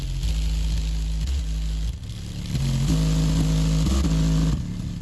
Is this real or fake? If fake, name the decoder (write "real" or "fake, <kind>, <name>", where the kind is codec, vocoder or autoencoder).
real